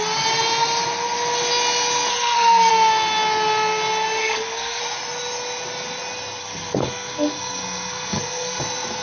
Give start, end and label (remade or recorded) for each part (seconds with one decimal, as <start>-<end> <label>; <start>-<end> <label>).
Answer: 0.0-2.1 recorded; 2.1-2.7 remade; 2.7-4.2 recorded; 4.2-4.8 remade; 4.8-6.4 recorded; 6.4-8.6 remade; 8.6-9.0 recorded